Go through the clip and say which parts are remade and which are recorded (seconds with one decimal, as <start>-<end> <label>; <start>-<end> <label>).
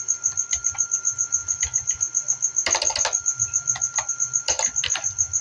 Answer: 0.0-5.4 recorded